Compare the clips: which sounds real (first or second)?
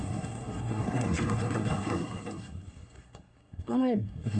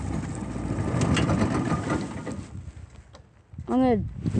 second